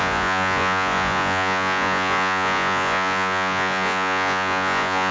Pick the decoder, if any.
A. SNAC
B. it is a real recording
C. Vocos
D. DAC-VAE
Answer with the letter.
C